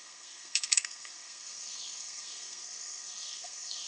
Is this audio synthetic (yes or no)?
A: yes